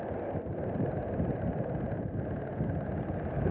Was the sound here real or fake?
real